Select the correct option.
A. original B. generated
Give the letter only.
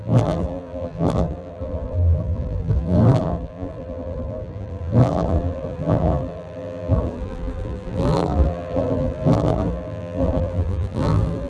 B